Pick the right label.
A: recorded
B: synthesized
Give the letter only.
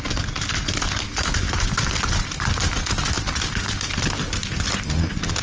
A